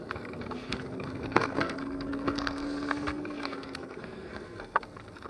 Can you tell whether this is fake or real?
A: fake